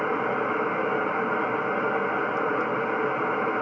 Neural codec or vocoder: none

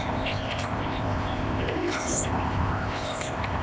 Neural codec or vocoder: codec, ZipCodec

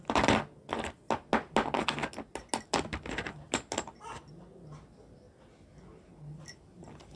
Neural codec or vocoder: none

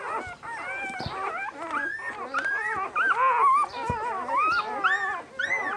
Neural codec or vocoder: none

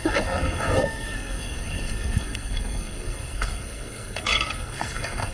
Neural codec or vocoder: codec, SNAC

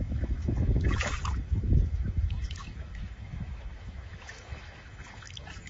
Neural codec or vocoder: autoencoder, DAC-VAE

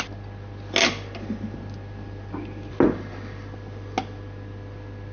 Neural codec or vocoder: none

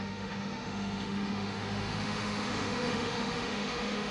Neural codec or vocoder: autoencoder, DAC-VAE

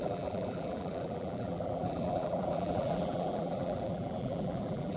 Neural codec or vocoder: vocoder, BigVGAN v2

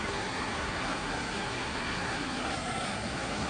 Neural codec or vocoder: codec, SNAC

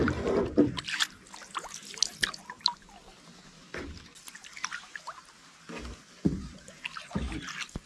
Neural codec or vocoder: none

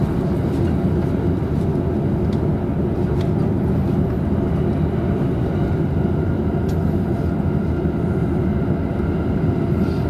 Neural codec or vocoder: none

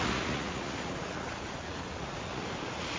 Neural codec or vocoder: vocoder, Vocos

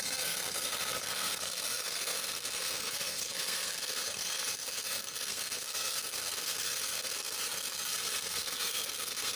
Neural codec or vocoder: codec, SNAC